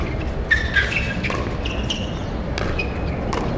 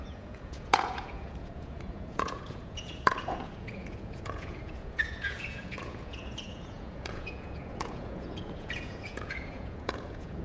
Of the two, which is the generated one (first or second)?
second